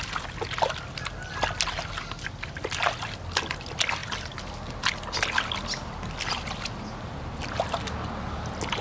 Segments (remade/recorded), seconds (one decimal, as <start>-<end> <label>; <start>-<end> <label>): 0.0-8.8 recorded